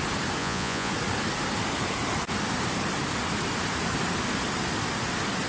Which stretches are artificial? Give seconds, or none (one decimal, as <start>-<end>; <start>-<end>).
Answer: 0.4-0.9